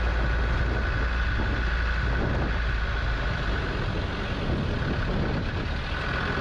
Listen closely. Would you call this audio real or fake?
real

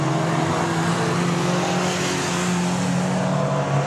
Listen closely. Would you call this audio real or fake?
real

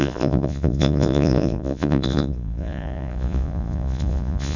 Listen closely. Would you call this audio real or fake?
fake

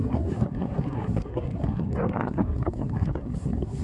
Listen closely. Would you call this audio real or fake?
fake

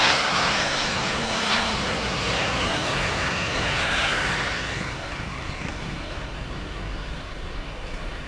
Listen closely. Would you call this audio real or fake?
fake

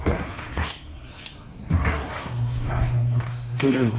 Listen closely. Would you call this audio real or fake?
fake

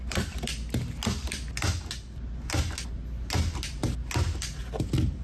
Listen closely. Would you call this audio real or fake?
real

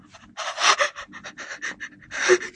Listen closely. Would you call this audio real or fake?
real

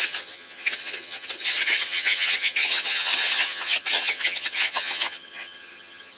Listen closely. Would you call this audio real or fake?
fake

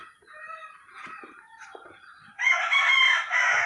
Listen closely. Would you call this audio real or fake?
real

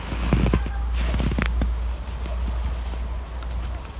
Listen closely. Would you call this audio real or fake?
real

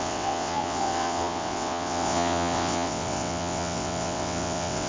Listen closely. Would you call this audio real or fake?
fake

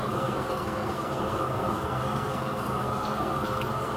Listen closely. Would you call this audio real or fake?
fake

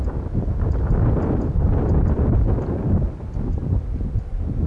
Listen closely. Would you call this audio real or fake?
real